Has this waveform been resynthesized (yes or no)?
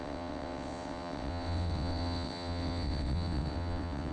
yes